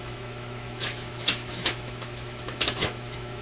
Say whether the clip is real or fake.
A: fake